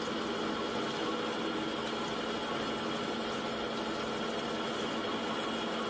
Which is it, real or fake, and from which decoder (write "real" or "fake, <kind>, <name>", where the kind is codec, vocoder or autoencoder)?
real